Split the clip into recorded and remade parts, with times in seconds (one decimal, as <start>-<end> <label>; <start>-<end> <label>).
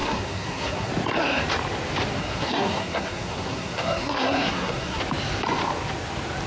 0.0-0.9 remade; 0.9-2.2 recorded; 2.2-5.0 remade; 5.0-6.5 recorded